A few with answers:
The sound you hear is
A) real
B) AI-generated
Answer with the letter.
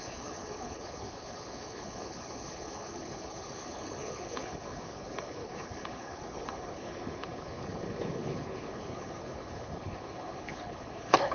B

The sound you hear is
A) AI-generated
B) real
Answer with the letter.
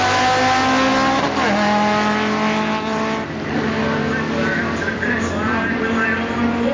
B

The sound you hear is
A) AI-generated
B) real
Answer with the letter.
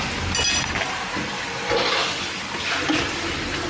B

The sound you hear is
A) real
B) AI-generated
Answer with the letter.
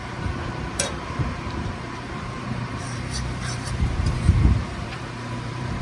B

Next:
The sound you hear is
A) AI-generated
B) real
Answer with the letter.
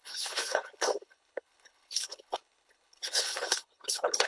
A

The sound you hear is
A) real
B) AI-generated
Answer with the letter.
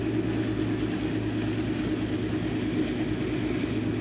A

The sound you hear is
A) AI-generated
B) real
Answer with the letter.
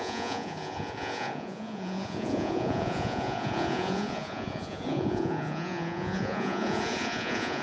A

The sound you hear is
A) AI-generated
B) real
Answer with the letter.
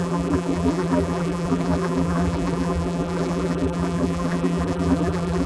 A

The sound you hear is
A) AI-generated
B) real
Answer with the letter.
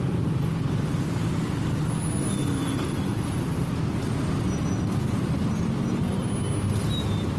B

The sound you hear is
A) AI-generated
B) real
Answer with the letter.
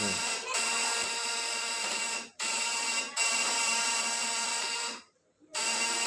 A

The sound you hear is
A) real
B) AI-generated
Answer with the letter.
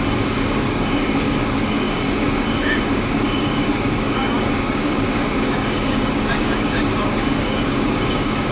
B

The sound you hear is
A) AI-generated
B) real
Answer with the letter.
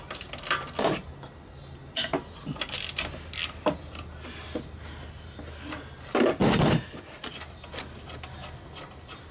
B